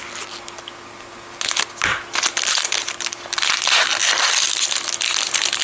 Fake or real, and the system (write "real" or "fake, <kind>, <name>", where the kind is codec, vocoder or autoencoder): real